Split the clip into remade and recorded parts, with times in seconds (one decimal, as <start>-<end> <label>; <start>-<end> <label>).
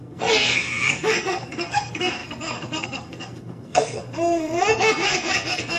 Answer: 0.0-5.8 remade